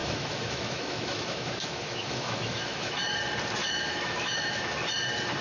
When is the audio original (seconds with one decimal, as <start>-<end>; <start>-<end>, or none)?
3.2-3.6; 4.6-5.4